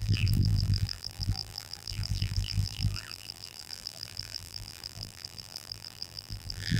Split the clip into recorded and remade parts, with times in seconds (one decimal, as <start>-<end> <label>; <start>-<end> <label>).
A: 0.0-6.8 remade